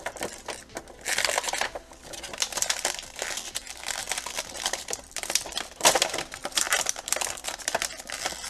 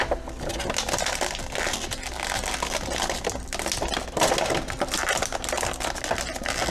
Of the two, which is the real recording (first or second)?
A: second